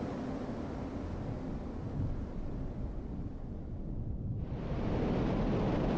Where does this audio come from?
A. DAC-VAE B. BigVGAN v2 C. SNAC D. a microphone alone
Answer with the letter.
D